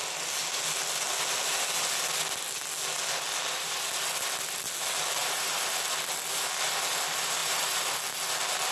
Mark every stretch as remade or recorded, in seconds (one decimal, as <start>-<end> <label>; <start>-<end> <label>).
0.0-5.2 recorded; 5.2-5.8 remade; 5.8-7.4 recorded; 7.4-8.0 remade; 8.0-8.7 recorded